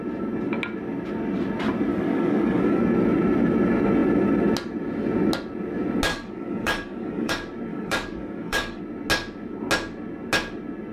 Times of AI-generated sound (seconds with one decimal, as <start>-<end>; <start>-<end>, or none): 1.9-2.8; 6.1-7.3; 7.7-8.8